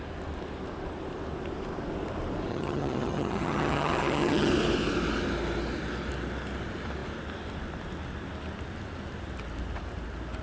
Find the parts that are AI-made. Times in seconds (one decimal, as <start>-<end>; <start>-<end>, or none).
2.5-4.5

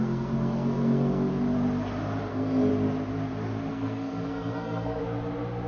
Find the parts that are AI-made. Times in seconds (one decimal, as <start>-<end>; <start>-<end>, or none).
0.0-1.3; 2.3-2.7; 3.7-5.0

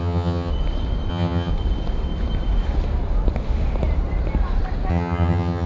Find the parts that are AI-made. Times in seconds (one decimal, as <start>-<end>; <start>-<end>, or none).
0.0-0.5; 1.1-1.5; 4.9-5.7

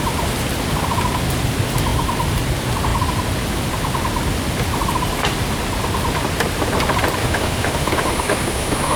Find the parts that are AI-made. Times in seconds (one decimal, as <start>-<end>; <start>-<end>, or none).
7.2-9.0

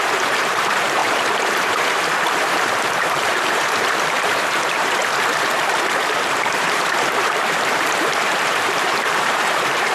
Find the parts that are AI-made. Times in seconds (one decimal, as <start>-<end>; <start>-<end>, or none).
0.0-5.0; 6.0-9.9